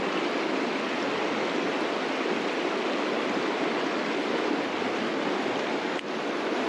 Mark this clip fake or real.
real